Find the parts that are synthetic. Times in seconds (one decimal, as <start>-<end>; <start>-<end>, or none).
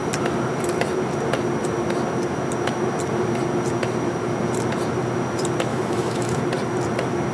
5.7-6.4